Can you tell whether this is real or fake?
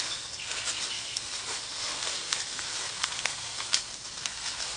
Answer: fake